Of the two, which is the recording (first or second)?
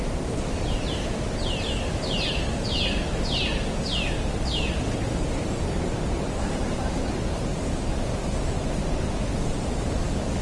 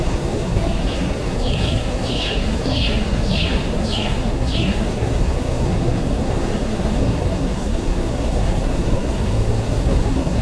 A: first